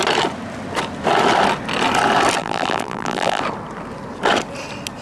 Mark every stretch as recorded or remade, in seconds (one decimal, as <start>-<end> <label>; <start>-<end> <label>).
0.0-2.4 recorded; 2.4-3.4 remade; 3.4-5.0 recorded